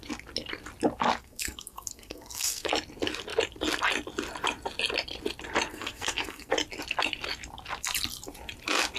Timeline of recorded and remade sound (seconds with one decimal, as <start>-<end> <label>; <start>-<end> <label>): 0.0-1.2 recorded; 1.2-2.7 remade; 2.7-5.7 recorded; 5.7-6.5 remade; 6.5-9.0 recorded